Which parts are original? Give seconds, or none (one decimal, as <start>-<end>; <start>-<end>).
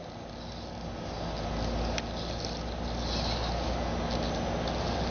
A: 0.0-5.1